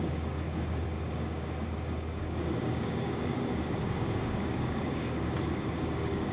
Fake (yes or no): yes